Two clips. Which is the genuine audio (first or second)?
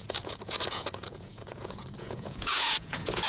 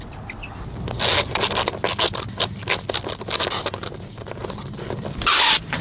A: second